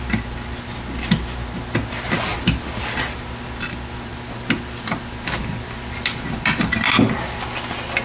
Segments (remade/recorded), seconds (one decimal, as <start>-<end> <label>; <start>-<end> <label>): 0.0-2.3 recorded; 2.3-2.8 remade; 2.8-8.0 recorded